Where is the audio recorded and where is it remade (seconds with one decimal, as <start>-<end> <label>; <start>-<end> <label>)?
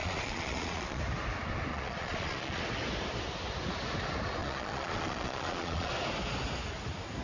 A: 0.0-1.0 remade; 1.0-1.7 recorded; 1.7-2.6 remade; 2.6-4.4 recorded; 4.4-5.9 remade; 5.9-7.2 recorded